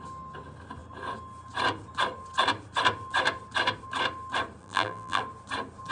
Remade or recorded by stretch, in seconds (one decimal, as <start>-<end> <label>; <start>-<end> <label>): 0.0-4.6 recorded; 4.6-5.2 remade; 5.2-5.9 recorded